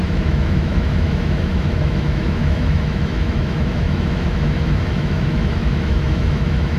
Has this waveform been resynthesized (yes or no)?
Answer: yes